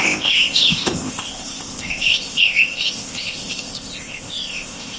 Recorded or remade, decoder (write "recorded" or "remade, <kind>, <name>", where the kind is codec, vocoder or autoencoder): remade, codec, ZipCodec